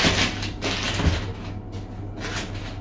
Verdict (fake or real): real